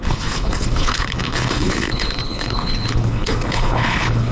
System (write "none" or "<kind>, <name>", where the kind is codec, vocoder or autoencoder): codec, HILCodec